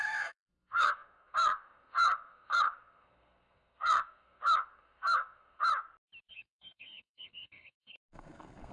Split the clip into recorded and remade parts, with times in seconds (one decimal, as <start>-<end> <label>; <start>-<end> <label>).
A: 0.0-5.7 remade; 5.7-6.3 recorded; 6.3-8.7 remade